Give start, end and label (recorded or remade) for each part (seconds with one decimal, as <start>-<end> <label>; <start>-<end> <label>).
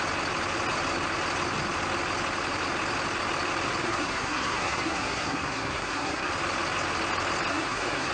0.0-3.8 recorded; 3.8-6.3 remade; 6.3-7.5 recorded; 7.5-8.1 remade